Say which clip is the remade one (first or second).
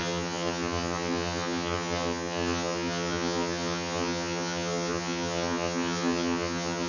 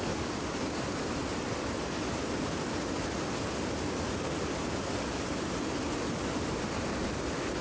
first